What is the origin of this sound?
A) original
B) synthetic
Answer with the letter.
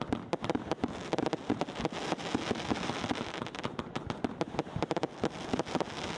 A